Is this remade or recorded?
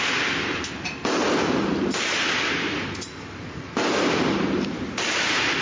recorded